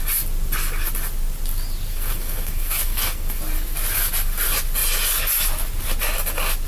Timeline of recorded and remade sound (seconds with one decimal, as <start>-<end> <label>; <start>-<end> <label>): 0.0-1.9 recorded; 1.9-3.4 remade; 3.4-6.7 recorded